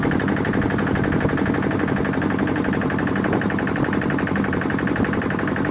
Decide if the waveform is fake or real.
real